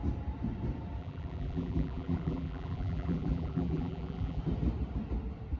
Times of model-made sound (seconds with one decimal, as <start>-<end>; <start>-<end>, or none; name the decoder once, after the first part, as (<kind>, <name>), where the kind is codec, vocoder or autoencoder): 1.0-4.4 (vocoder, BigVGAN v2)